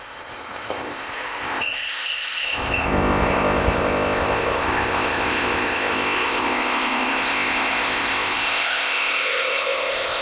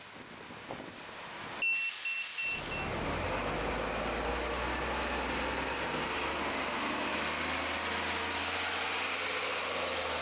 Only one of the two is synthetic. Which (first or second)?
first